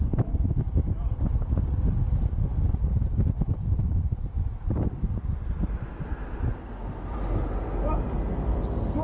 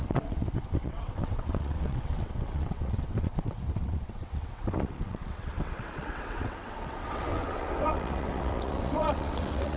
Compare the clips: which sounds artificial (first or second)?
second